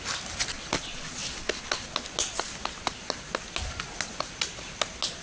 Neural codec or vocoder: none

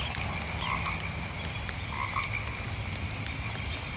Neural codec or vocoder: none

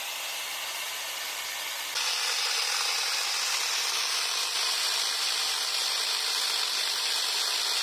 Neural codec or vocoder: none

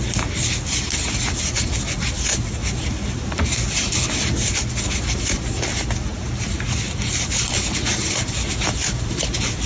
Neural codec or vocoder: none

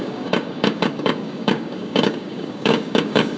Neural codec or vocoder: codec, DAC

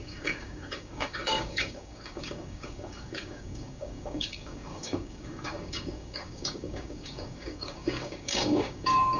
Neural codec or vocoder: codec, DAC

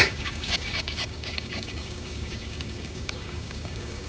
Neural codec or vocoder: codec, DAC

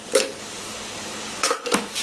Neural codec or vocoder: codec, DAC